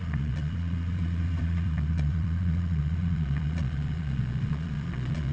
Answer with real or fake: fake